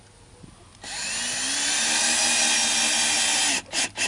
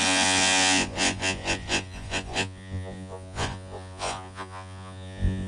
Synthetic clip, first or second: second